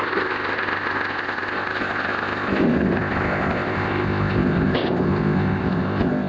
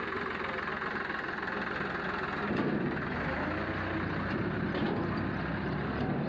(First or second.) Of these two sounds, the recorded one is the second